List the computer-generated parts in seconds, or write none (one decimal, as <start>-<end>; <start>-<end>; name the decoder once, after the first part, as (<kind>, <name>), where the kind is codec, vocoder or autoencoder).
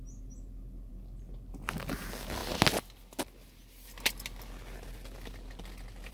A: none